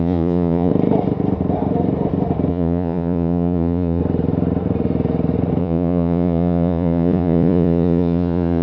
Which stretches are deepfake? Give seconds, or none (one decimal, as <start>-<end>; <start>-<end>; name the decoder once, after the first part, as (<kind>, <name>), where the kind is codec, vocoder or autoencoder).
0.0-0.7 (vocoder, Vocos); 2.5-4.0; 5.6-8.6